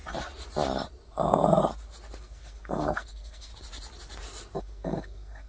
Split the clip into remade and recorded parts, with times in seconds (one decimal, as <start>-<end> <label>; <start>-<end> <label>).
0.0-1.2 recorded; 1.2-1.6 remade; 1.6-2.2 recorded; 2.2-3.5 remade; 3.5-4.6 recorded; 4.6-5.5 remade